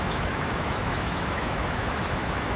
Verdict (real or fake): fake